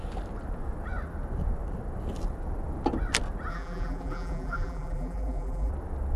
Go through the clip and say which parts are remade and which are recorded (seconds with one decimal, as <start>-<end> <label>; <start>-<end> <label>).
0.0-3.5 recorded; 3.5-5.7 remade; 5.7-6.2 recorded